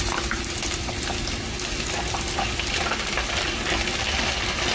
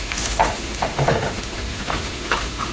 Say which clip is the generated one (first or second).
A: second